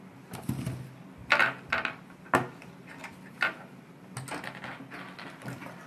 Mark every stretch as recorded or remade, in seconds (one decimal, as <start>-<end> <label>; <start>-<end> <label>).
0.0-5.9 recorded